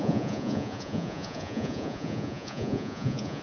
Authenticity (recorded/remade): remade